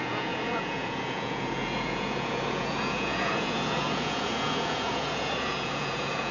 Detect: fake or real fake